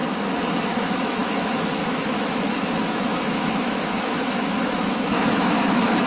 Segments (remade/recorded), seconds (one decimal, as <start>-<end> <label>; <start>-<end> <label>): 0.0-0.7 recorded; 0.7-6.1 remade